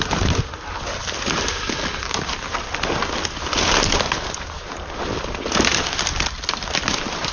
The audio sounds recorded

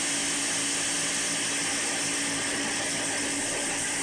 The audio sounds recorded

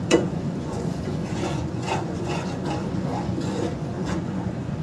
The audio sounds remade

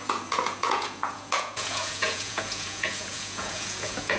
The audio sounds remade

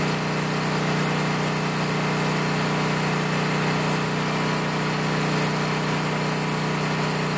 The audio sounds recorded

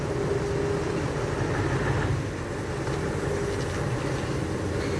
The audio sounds recorded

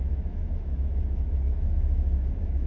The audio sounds remade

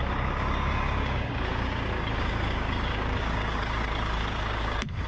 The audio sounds remade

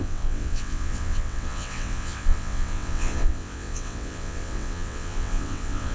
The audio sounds remade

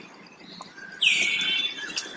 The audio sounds recorded